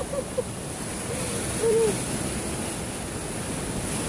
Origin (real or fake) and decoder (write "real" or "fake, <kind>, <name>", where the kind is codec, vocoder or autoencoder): real